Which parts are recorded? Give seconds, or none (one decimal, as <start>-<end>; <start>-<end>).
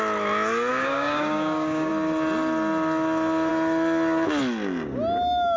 0.0-0.7; 1.9-5.6